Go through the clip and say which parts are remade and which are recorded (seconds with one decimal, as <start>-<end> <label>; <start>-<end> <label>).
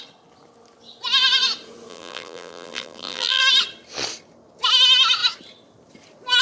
0.0-1.9 recorded; 1.9-3.4 remade; 3.4-6.4 recorded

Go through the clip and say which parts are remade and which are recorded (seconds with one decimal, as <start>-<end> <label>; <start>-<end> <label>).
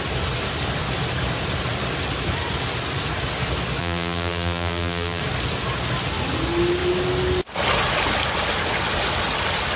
0.0-3.8 recorded; 3.8-5.2 remade; 5.2-9.8 recorded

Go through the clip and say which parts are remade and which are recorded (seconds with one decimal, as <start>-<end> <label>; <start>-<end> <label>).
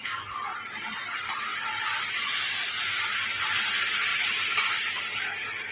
0.0-5.7 recorded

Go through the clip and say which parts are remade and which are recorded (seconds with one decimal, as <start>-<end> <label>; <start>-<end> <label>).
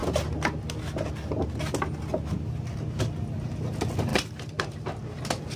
0.0-4.1 recorded; 4.1-5.0 remade; 5.0-5.6 recorded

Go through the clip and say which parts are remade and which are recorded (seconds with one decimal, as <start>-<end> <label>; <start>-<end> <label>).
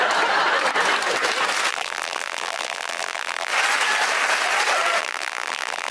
0.0-1.7 recorded; 1.7-3.5 remade; 3.5-5.0 recorded; 5.0-5.9 remade